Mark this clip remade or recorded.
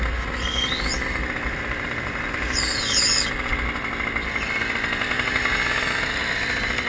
recorded